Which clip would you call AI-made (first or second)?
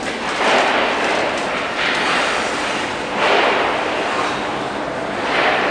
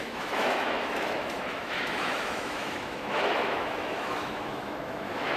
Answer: second